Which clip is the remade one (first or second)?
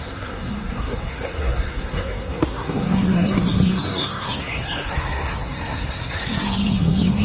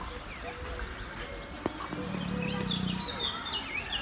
first